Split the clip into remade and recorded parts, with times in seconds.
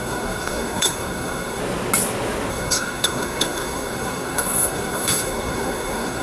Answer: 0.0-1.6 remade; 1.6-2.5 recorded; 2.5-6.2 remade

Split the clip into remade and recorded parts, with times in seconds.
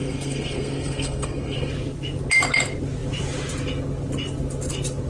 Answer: 0.0-1.7 remade; 1.7-5.1 recorded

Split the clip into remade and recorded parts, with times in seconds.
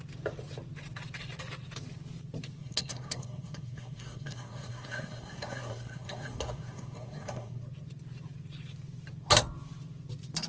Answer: 0.0-2.6 recorded; 2.6-7.6 remade; 7.6-10.5 recorded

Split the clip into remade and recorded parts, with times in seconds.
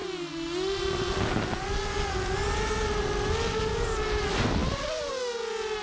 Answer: 0.0-5.8 recorded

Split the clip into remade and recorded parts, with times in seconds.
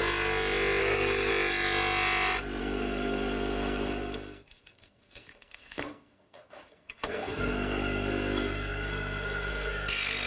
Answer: 0.0-0.8 recorded; 0.8-1.3 remade; 1.3-2.6 recorded; 2.6-10.3 remade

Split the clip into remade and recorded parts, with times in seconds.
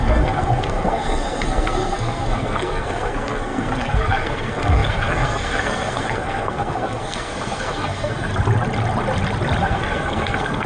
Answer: 0.0-8.3 remade; 8.3-9.6 recorded; 9.6-10.7 remade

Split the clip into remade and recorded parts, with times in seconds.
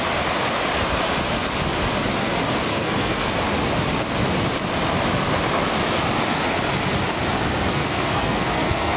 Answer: 0.0-2.7 recorded; 2.7-3.3 remade; 3.3-7.7 recorded; 7.7-9.0 remade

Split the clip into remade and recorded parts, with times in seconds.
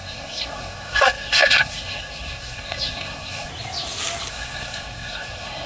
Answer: 0.0-3.5 remade; 3.5-4.3 recorded; 4.3-5.7 remade